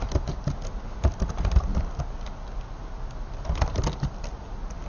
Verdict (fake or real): real